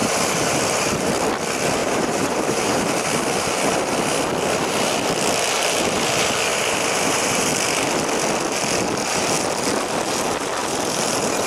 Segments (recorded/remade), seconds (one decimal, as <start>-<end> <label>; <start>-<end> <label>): 0.0-1.1 remade; 1.1-1.8 recorded; 1.8-2.9 remade; 2.9-6.5 recorded; 6.5-7.5 remade; 7.5-11.5 recorded